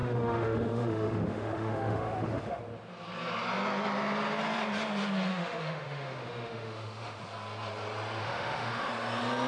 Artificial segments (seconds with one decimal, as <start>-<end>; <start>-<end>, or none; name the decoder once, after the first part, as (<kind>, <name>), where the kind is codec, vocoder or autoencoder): 0.0-2.6 (autoencoder, DAC-VAE); 5.3-7.2; 8.2-8.9